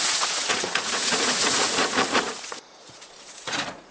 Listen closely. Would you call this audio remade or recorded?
remade